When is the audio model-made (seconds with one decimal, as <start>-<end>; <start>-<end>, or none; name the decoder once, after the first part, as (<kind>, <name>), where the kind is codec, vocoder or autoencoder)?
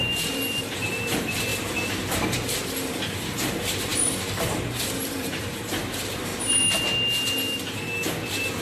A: 0.0-1.5 (vocoder, BigVGAN v2); 2.9-6.3